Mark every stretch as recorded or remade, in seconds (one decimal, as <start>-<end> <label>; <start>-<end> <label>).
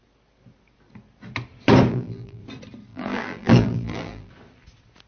0.0-1.9 recorded; 1.9-2.4 remade; 2.4-2.9 recorded; 2.9-4.3 remade; 4.3-5.1 recorded